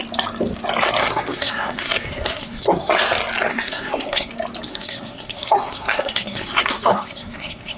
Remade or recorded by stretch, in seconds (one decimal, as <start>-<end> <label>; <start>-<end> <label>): 0.0-1.0 recorded; 1.0-2.9 remade; 2.9-3.5 recorded; 3.5-4.3 remade; 4.3-4.7 recorded; 4.7-7.8 remade